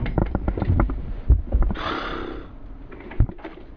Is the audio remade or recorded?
recorded